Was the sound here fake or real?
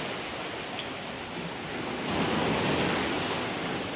real